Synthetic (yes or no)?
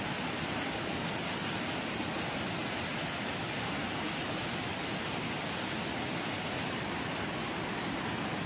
no